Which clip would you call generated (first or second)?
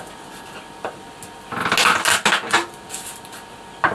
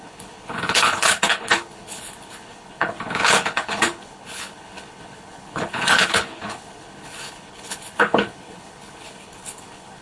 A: second